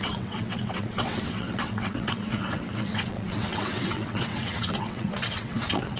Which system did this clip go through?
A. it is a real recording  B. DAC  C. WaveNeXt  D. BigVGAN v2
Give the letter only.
C